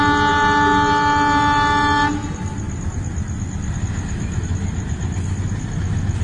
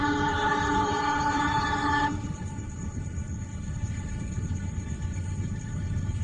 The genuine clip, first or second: first